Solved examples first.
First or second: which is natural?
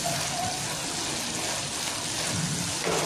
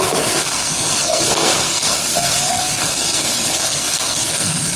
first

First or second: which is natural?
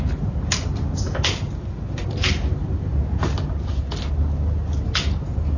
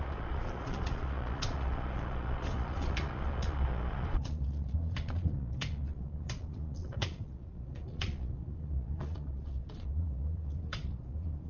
first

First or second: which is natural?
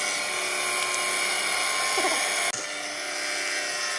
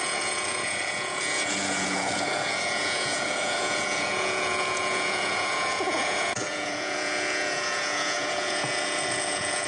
first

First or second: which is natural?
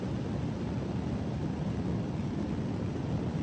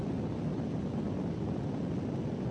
second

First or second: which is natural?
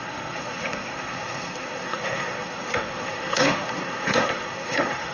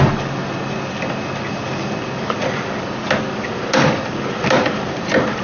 second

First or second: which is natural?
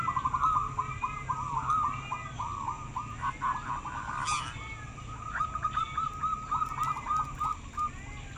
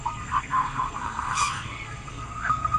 first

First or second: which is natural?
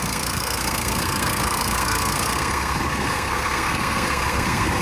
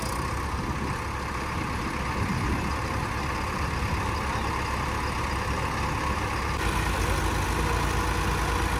second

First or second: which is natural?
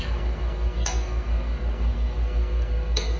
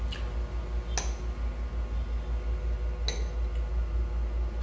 second